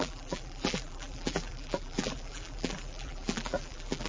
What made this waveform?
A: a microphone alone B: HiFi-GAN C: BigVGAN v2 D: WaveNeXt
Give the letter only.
C